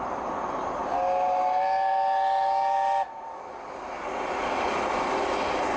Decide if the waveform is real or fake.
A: real